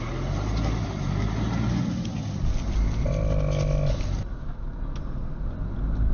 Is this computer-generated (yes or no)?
no